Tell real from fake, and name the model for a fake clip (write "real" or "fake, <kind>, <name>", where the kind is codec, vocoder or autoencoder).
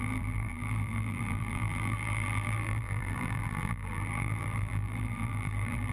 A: fake, vocoder, BigVGAN v2